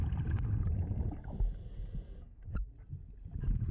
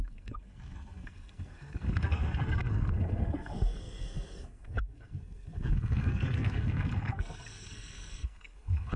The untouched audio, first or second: first